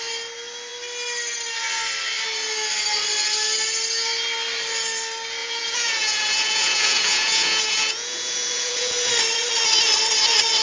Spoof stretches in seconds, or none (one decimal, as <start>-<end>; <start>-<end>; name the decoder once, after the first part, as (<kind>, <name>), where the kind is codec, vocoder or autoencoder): 5.4-9.1 (vocoder, Vocos)